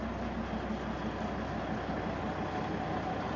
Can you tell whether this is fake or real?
real